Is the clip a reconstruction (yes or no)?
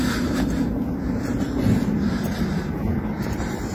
no